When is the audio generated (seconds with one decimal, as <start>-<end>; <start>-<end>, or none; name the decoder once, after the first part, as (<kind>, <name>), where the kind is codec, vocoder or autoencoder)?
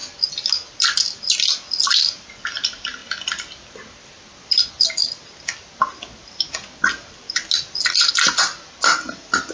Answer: none